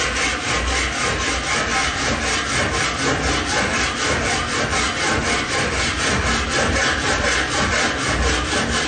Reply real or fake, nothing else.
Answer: real